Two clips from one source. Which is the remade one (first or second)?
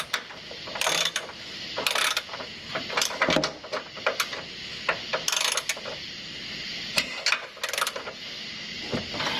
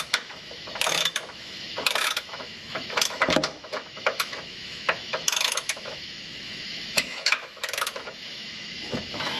second